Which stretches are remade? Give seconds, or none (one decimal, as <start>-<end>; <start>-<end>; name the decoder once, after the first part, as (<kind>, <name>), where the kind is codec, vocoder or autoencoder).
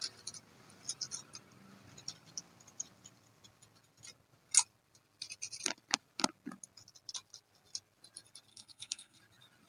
8.5-9.2 (codec, SNAC)